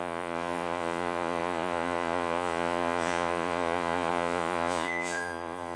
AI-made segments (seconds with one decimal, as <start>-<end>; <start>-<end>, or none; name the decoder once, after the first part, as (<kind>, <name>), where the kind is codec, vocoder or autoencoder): 0.0-5.8 (vocoder, Vocos)